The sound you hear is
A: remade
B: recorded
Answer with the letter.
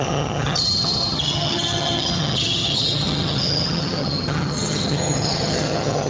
A